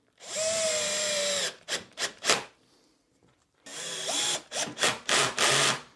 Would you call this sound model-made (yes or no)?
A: yes